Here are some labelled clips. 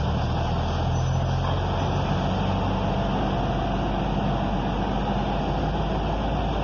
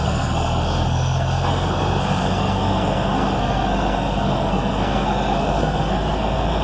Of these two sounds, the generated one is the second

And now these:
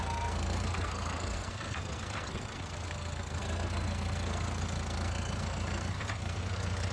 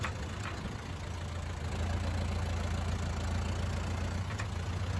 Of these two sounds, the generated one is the first